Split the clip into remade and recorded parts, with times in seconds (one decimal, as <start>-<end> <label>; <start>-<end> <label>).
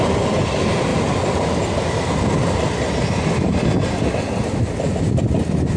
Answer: 0.0-5.8 recorded